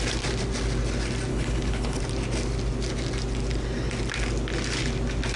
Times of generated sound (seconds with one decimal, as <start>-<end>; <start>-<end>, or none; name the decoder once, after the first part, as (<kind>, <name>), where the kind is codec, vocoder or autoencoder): 1.3-2.0 (codec, HILCodec)